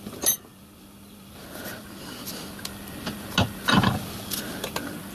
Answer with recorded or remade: recorded